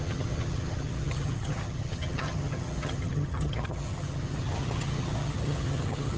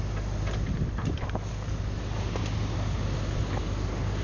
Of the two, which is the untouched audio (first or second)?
second